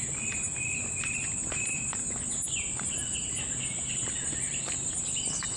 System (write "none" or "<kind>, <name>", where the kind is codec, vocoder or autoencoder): none